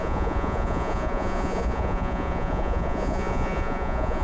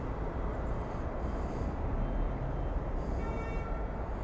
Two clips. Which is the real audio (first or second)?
second